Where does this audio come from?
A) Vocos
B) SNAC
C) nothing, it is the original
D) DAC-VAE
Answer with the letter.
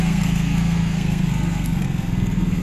B